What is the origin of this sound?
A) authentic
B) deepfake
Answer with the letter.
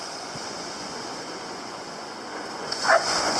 B